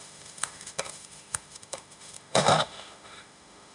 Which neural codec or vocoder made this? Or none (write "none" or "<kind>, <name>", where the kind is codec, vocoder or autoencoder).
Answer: autoencoder, DAC-VAE